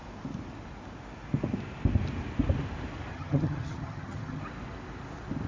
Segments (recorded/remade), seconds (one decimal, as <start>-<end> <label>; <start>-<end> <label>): 0.0-3.1 recorded; 3.1-4.4 remade; 4.4-5.5 recorded